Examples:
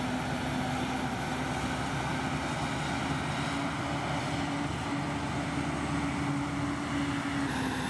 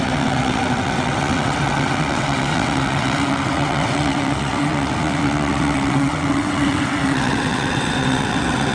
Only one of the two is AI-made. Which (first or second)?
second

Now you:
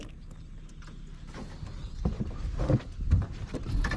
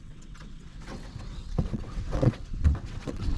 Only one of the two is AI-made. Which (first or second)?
second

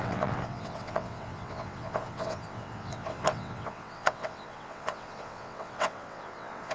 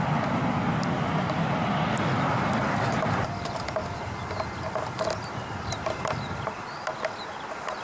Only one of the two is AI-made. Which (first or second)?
first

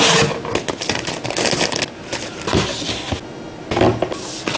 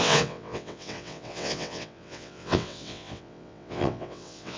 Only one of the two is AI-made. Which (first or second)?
second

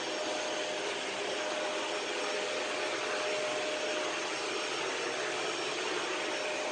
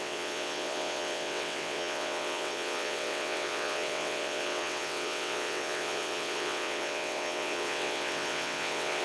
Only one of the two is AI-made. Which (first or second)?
second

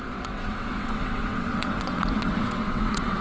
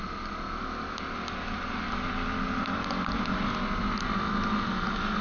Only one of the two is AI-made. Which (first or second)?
first